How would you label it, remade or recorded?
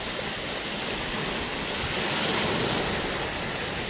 recorded